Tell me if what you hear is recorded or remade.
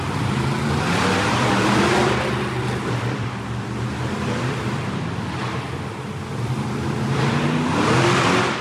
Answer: remade